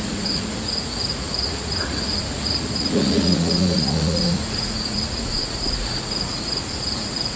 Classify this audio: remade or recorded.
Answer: remade